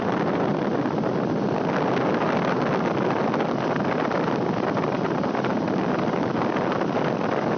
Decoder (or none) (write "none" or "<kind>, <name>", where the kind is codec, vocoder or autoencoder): none